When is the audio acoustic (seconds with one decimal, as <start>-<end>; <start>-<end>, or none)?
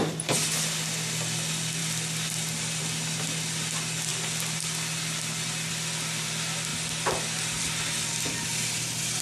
0.0-9.2